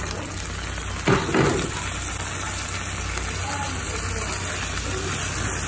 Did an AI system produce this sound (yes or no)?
no